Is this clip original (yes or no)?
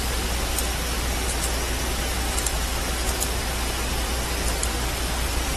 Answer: yes